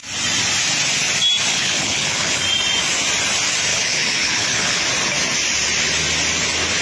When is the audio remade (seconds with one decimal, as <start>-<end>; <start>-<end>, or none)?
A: 1.5-2.4; 3.7-4.8